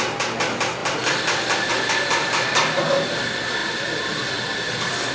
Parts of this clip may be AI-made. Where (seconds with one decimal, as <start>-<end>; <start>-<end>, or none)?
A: none